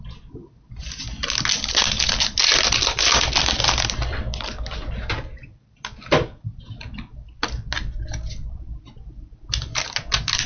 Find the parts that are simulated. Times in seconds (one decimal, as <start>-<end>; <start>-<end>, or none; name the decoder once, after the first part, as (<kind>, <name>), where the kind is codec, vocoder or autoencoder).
none